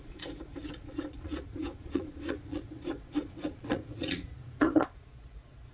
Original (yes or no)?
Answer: no